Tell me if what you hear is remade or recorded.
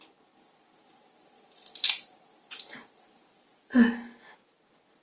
recorded